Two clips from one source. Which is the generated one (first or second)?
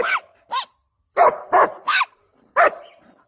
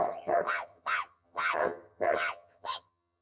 second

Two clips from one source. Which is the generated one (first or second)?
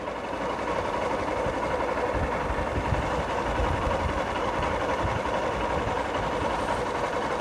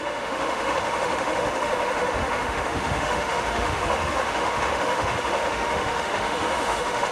second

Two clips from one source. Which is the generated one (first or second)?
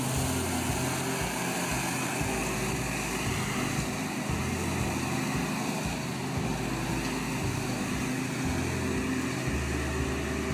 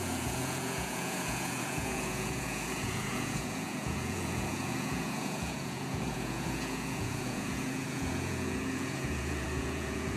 second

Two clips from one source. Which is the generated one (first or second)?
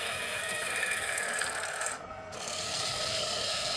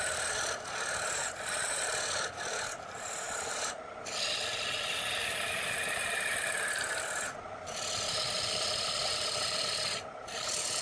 first